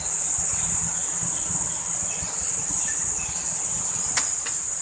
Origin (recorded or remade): recorded